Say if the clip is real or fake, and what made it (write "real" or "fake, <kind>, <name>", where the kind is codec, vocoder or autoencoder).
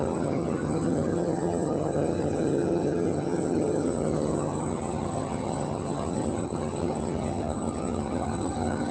fake, vocoder, HiFi-GAN